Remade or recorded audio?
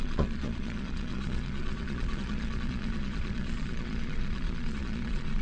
remade